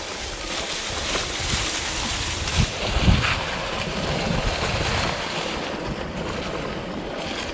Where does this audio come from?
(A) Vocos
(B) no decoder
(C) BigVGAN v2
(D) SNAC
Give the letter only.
C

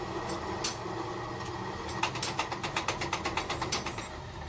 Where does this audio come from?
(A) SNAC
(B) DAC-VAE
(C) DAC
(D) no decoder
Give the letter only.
D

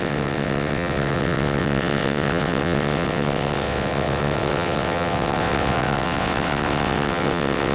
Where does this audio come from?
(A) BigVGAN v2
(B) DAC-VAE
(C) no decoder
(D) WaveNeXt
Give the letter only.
D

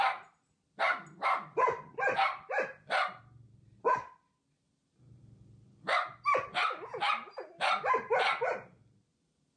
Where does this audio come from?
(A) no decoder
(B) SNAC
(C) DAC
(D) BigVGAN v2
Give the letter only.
A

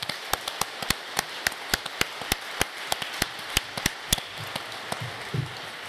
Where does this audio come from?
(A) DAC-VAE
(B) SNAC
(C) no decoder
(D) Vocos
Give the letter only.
C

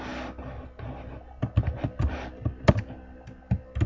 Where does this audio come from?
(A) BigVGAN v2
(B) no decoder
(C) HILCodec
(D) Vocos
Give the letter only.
B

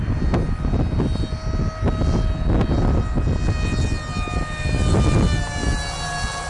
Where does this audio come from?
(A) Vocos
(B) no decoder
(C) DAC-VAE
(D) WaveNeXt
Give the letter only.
B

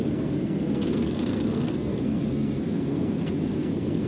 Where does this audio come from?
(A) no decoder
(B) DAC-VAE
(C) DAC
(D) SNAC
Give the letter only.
D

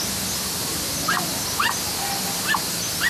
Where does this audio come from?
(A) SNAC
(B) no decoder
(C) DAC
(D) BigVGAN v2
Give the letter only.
B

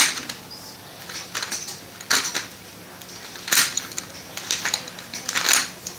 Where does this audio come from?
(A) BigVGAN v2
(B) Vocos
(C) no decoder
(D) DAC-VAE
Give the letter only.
C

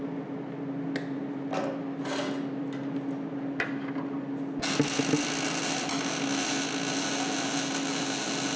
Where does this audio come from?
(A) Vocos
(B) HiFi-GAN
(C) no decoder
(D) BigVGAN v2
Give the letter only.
C